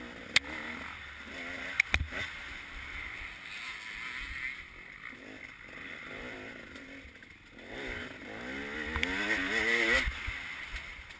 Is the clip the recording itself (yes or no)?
yes